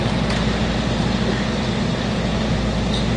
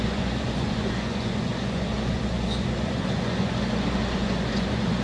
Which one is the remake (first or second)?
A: second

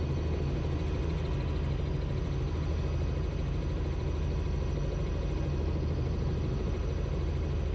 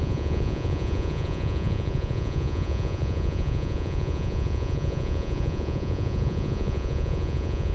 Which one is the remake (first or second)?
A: second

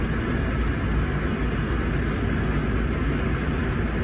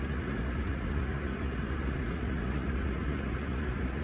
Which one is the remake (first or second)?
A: second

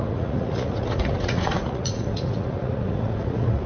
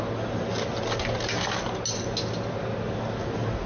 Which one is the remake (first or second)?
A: first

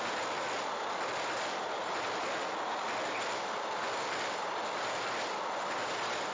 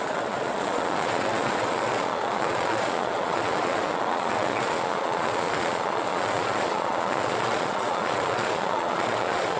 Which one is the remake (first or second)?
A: second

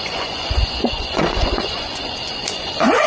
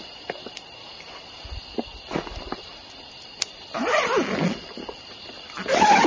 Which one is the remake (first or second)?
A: first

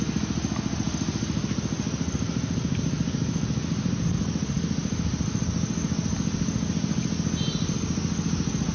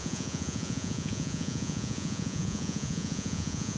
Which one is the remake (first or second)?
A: second